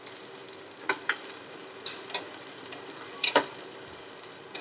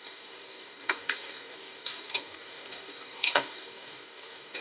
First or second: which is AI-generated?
second